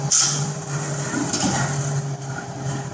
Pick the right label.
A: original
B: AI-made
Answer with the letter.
A